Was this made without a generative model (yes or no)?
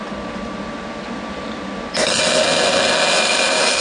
yes